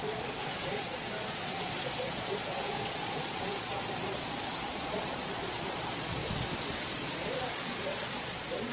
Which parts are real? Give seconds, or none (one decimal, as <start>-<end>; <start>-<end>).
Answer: 6.2-6.8